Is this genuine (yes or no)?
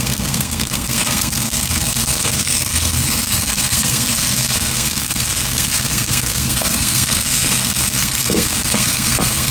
no